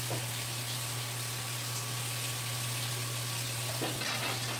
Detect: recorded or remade recorded